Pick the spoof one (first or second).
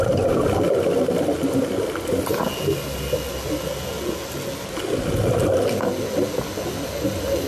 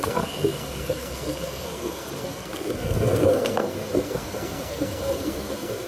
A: second